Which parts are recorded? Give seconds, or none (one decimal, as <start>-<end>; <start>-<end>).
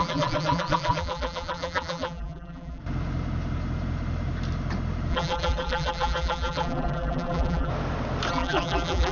2.8-5.1; 7.7-8.3